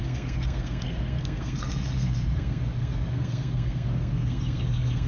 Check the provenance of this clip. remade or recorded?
remade